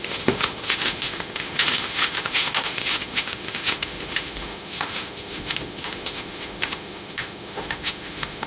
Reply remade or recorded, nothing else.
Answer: remade